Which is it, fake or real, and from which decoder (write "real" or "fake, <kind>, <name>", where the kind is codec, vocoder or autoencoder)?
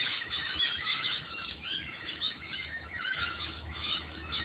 fake, autoencoder, DAC-VAE